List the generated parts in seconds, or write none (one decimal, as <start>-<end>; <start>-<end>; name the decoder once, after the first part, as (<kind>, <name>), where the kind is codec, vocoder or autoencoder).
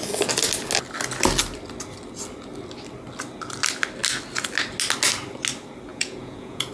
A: 5.9-6.7 (vocoder, Vocos)